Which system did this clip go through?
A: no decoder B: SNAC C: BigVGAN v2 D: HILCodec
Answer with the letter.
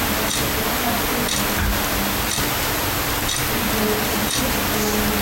A